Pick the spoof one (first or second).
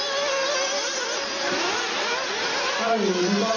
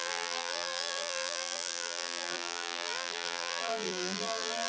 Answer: second